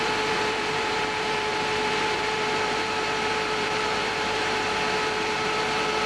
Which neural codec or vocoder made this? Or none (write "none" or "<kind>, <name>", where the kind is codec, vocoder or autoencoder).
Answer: vocoder, BigVGAN v2